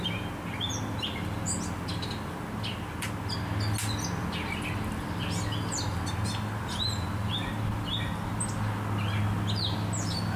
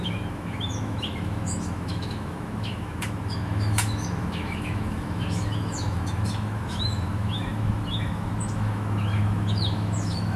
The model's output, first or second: second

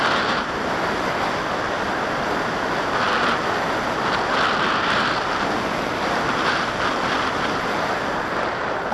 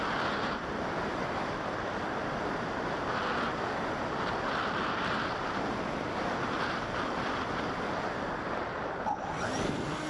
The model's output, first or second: second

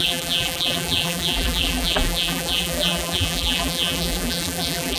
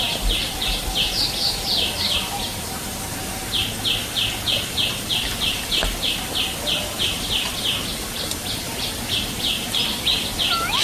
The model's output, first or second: first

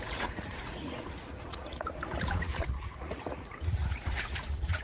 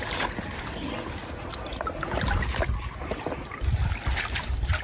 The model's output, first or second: first